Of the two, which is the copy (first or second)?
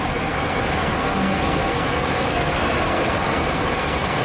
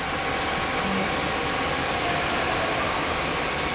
first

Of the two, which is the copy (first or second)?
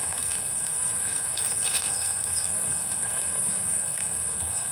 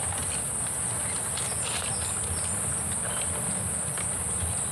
first